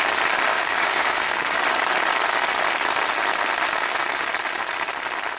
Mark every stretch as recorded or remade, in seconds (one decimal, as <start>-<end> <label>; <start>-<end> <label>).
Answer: 0.0-0.5 recorded; 0.5-1.6 remade; 1.6-5.4 recorded